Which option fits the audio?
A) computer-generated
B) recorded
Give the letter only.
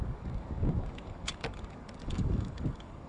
A